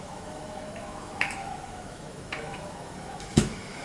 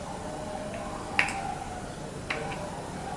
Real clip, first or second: second